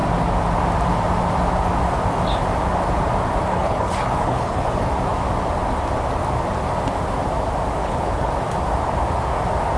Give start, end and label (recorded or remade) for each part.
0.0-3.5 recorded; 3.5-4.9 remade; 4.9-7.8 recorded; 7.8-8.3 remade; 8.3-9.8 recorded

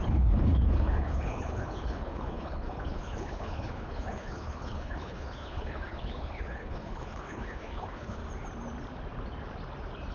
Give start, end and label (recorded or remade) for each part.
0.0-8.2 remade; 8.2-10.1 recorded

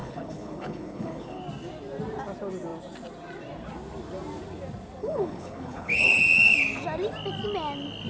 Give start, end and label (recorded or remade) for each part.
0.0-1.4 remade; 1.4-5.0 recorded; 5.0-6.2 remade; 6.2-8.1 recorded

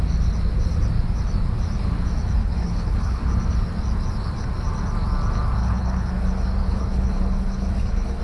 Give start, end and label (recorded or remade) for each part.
0.0-2.4 recorded; 2.4-3.2 remade; 3.2-5.6 recorded; 5.6-6.1 remade; 6.1-6.6 recorded; 6.6-8.2 remade

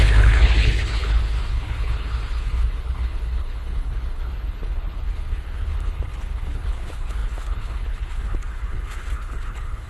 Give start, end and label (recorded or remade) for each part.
0.0-9.9 remade

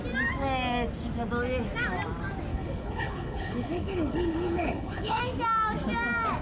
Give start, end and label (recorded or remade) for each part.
0.0-2.5 recorded; 2.5-5.2 remade; 5.2-6.4 recorded

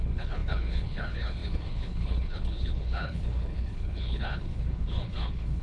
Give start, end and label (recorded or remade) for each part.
0.0-5.6 remade

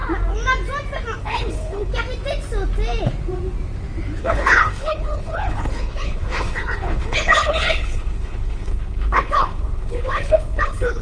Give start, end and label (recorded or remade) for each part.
0.0-1.2 recorded; 1.2-1.9 remade; 1.9-4.2 recorded; 4.2-11.0 remade